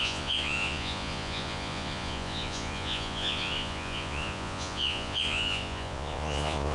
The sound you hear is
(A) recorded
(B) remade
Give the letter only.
B